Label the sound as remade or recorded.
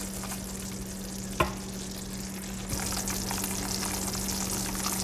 recorded